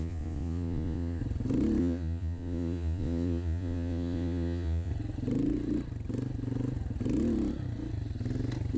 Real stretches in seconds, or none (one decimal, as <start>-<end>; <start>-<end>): 1.2-1.8; 4.9-8.8